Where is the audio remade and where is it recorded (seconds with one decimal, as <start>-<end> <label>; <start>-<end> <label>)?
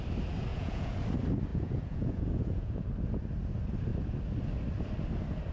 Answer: 0.0-0.5 recorded; 0.5-1.0 remade; 1.0-1.5 recorded; 1.5-2.9 remade; 2.9-5.5 recorded